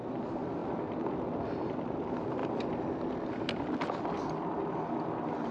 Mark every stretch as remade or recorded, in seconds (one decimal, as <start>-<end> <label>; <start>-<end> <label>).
0.0-5.5 recorded